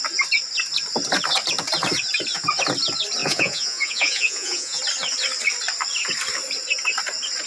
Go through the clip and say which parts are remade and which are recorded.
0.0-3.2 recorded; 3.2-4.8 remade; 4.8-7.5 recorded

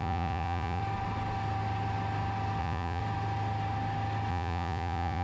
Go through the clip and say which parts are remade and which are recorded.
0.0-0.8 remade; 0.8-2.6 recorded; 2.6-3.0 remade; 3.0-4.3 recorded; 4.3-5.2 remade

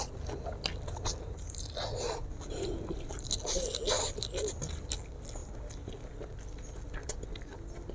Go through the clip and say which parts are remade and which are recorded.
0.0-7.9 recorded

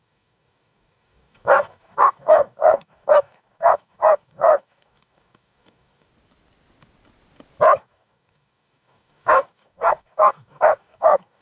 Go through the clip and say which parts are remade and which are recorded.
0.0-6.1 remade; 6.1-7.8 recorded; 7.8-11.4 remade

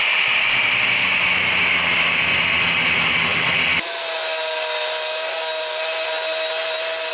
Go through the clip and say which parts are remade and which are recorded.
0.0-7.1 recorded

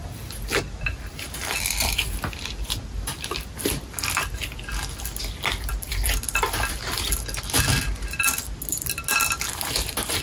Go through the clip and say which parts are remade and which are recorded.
0.0-10.2 recorded